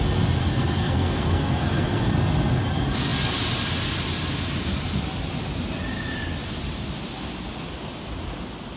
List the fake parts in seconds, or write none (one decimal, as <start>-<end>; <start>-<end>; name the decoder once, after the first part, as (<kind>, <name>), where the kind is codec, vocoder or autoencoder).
0.4-2.1 (codec, SNAC)